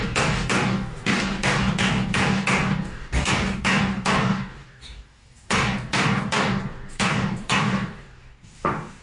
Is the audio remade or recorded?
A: remade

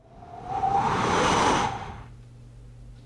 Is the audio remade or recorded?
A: recorded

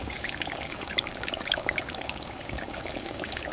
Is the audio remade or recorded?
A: remade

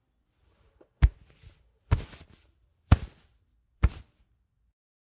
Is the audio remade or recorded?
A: recorded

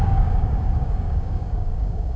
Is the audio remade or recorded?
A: remade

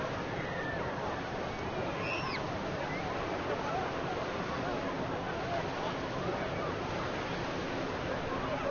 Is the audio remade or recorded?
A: recorded